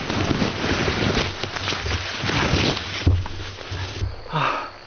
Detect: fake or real real